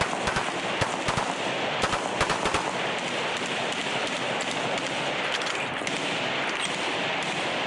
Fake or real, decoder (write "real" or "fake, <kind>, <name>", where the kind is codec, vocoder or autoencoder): real